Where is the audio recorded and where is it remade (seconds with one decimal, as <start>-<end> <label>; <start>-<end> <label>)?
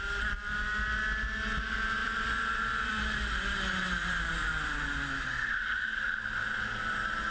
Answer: 0.0-2.0 recorded; 2.0-3.0 remade; 3.0-7.3 recorded